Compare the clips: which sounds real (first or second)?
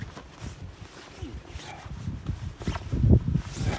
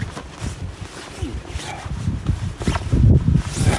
first